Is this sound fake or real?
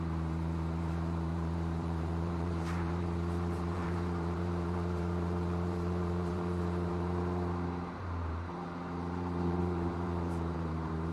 fake